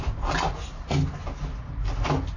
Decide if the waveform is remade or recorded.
recorded